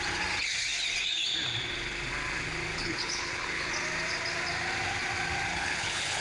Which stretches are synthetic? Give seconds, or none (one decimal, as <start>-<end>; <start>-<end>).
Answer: 2.7-3.7; 5.5-6.2